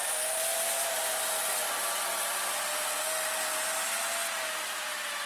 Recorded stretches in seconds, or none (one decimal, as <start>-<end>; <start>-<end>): 0.0-5.3